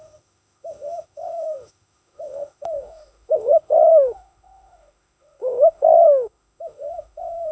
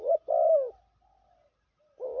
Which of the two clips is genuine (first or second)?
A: second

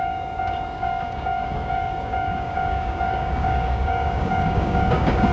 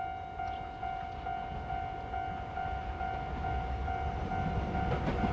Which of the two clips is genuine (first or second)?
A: second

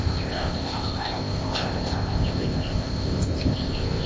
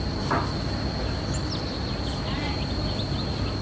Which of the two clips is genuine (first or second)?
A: second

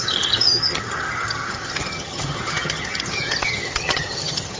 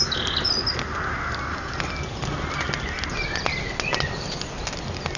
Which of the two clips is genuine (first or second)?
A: second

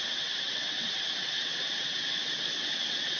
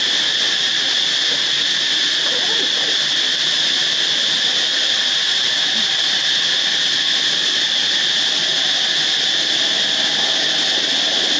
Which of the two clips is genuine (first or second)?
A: second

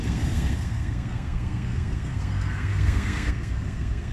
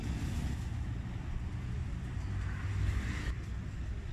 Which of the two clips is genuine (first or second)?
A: second